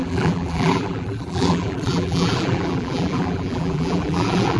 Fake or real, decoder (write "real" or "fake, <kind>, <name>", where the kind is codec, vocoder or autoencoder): fake, vocoder, BigVGAN v2